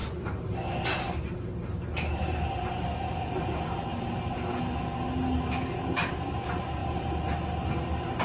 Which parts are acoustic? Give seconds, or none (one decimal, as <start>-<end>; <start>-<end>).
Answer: 0.0-8.2